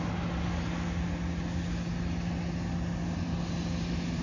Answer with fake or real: real